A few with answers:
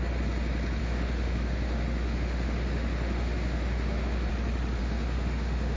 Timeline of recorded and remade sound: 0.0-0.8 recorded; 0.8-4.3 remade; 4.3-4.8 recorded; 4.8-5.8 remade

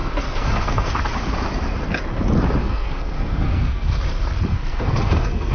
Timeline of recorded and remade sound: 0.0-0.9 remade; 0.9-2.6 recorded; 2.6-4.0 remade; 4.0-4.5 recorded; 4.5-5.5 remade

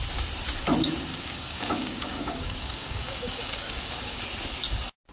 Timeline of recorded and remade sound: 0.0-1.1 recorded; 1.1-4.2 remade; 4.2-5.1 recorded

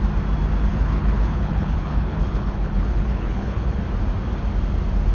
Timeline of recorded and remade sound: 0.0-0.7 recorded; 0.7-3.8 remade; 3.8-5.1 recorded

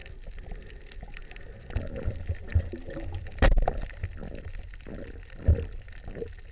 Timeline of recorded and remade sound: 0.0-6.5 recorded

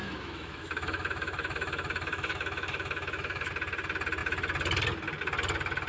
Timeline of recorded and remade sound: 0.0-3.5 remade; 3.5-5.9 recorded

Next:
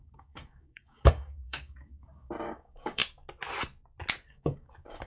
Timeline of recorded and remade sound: 0.0-3.0 remade; 3.0-4.3 recorded; 4.3-5.1 remade